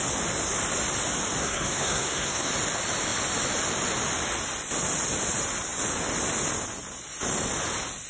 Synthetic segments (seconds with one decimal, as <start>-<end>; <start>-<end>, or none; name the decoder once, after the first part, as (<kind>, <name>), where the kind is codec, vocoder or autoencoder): 1.4-2.5 (codec, SNAC)

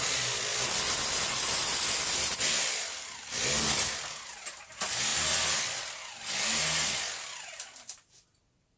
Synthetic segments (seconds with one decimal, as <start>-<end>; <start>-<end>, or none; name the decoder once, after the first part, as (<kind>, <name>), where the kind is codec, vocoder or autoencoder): none

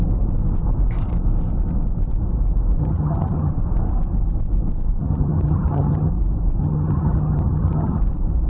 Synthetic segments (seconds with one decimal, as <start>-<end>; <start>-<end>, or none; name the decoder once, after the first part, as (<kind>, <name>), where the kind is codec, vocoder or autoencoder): 2.8-3.5 (vocoder, HiFi-GAN); 5.0-6.1; 6.6-8.0